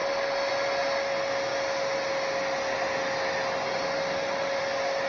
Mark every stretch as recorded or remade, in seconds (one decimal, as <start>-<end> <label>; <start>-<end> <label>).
0.0-5.1 recorded